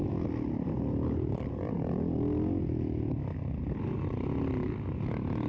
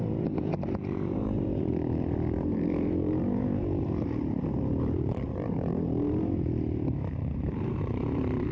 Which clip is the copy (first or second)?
second